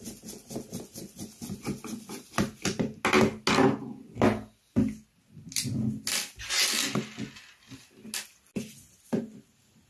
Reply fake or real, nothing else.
real